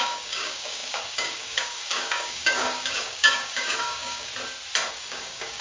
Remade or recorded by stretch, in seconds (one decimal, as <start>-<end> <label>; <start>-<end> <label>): 0.0-4.3 remade; 4.3-4.9 recorded; 4.9-5.6 remade